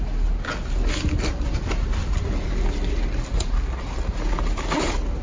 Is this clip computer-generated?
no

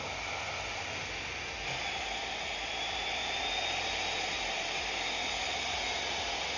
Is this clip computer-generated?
no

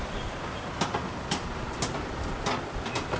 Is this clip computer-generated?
no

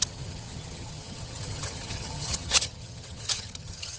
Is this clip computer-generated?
yes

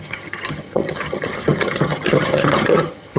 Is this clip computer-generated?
yes